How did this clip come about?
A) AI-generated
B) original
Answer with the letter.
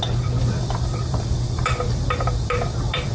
A